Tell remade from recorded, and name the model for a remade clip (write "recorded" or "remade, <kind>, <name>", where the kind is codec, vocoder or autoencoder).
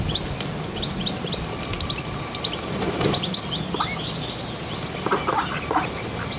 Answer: recorded